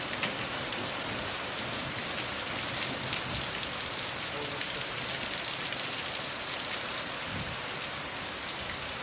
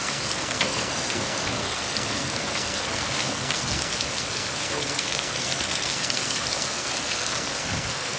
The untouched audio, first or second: first